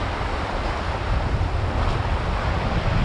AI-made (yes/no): no